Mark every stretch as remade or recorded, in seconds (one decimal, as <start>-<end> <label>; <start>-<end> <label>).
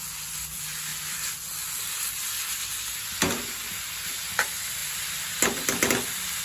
0.0-6.4 recorded